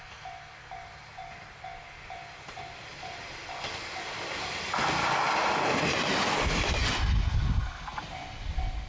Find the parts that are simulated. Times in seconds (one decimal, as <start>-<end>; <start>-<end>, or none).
none